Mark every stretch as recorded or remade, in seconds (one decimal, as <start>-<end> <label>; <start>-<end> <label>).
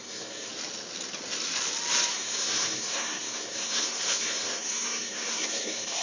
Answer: 0.0-0.5 remade; 0.5-2.1 recorded; 2.1-6.0 remade